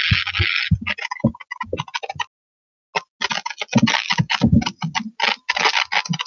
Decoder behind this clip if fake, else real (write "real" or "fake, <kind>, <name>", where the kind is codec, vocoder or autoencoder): real